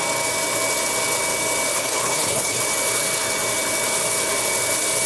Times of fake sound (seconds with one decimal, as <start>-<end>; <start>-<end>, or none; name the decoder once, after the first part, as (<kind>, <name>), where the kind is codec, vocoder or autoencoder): 1.7-2.6 (codec, HILCodec)